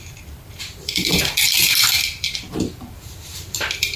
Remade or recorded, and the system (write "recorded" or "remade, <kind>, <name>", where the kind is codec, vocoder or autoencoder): remade, vocoder, BigVGAN v2